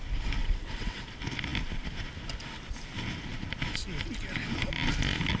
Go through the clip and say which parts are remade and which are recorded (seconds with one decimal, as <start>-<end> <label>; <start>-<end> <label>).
0.0-0.4 recorded; 0.4-1.0 remade; 1.0-5.4 recorded